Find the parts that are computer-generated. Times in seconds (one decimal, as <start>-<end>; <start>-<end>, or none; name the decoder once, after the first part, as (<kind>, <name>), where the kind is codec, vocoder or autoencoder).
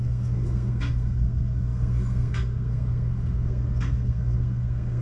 0.0-5.0 (codec, SNAC)